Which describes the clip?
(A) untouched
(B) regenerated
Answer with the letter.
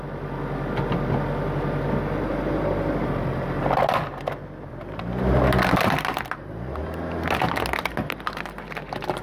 A